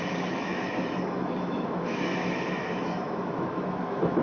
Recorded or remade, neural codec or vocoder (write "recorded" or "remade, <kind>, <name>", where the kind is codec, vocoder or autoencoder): remade, autoencoder, DAC-VAE